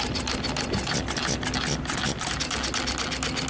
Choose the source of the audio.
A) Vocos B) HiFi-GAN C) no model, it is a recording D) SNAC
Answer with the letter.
C